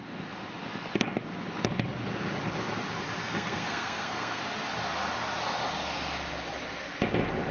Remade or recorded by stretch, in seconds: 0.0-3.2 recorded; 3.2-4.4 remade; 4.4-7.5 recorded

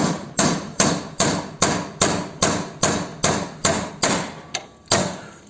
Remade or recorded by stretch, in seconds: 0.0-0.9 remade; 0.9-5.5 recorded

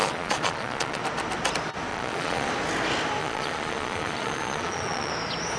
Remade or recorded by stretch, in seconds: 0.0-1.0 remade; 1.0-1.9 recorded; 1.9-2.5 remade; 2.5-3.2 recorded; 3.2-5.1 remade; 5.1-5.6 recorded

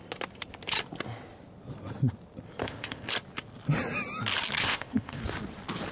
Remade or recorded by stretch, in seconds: 0.0-2.6 recorded; 2.6-3.1 remade; 3.1-4.6 recorded; 4.6-5.2 remade; 5.2-5.9 recorded

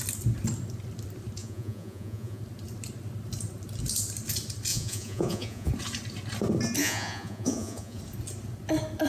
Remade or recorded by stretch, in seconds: 0.0-1.4 recorded; 1.4-2.4 remade; 2.4-4.7 recorded; 4.7-5.7 remade; 5.7-6.8 recorded; 6.8-8.0 remade; 8.0-9.1 recorded

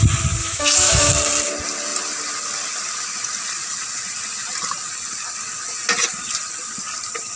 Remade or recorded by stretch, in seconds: 0.0-0.4 recorded; 0.4-1.1 remade; 1.1-7.4 recorded